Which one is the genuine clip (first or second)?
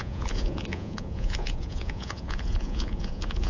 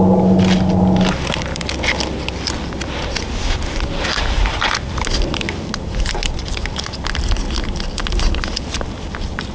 second